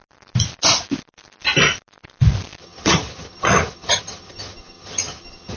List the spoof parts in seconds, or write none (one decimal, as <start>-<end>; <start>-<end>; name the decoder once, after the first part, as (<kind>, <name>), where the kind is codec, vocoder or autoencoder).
2.6-5.6 (vocoder, HiFi-GAN)